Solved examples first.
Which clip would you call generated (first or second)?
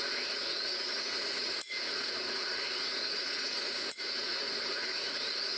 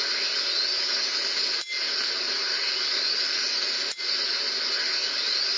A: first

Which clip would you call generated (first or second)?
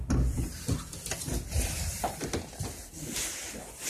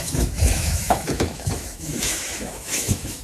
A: second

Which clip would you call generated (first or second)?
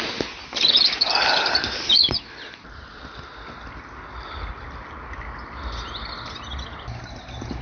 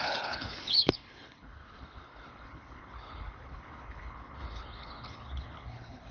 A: second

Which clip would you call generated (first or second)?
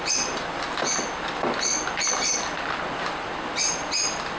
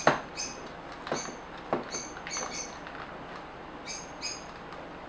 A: first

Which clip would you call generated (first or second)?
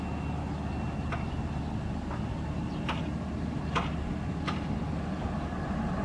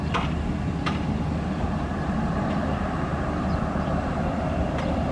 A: second